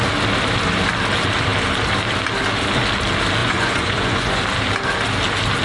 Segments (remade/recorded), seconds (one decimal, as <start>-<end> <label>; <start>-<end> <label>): 0.0-3.4 recorded; 3.4-4.4 remade; 4.4-5.6 recorded